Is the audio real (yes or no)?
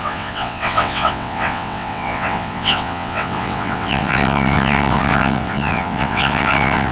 no